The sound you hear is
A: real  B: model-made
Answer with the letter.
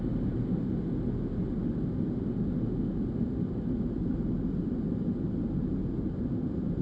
A